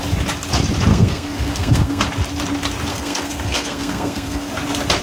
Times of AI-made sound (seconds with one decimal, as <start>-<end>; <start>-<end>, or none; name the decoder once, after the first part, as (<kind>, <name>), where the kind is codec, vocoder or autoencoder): 0.9-2.0 (codec, SNAC); 2.9-4.5